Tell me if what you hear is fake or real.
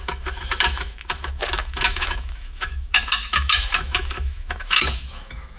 fake